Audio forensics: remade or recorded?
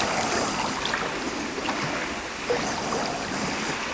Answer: recorded